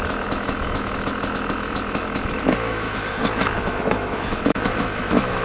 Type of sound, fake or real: fake